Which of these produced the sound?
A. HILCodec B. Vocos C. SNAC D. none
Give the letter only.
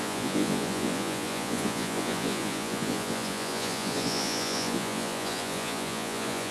B